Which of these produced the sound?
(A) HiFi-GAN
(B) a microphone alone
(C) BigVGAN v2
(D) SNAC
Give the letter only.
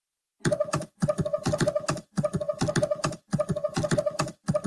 B